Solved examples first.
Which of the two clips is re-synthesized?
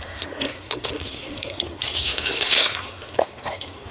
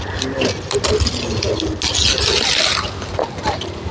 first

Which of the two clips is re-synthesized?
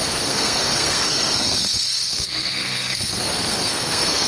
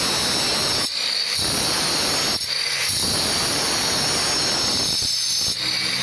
first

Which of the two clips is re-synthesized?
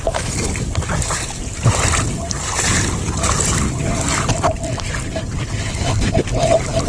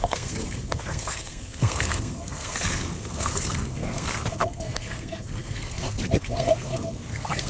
second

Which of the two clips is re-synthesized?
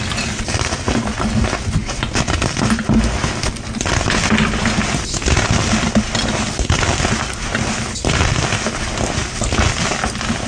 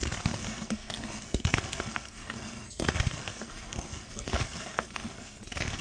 second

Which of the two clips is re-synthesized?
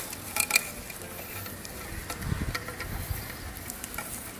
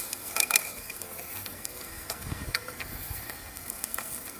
second